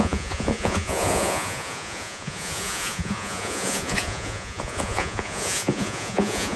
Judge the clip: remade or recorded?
remade